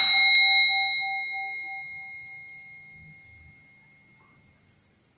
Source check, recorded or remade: recorded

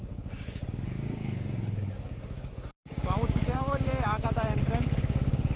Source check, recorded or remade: remade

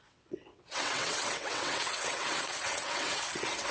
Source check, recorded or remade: remade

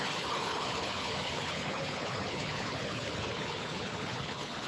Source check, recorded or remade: remade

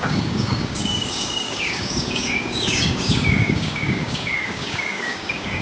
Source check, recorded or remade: remade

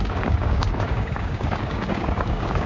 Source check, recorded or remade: remade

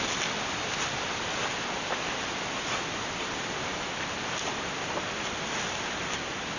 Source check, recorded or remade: recorded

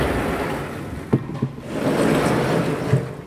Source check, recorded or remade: recorded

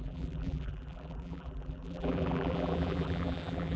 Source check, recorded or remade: remade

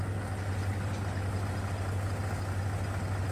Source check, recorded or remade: recorded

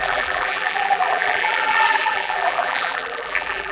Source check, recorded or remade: remade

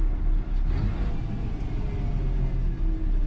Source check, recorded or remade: recorded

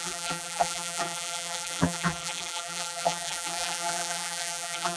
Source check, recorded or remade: remade